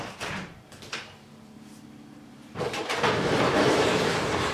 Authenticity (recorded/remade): remade